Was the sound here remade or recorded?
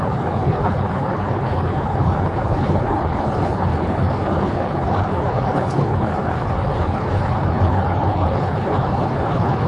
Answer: remade